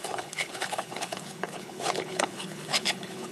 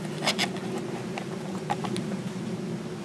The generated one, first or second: first